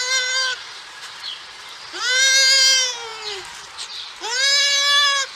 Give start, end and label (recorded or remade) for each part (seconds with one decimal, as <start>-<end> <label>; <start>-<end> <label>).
0.0-1.3 recorded; 1.3-2.0 remade; 2.0-5.4 recorded